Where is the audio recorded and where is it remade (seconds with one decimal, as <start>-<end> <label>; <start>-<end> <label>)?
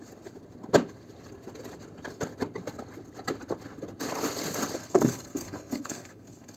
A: 0.0-4.8 recorded; 4.8-6.6 remade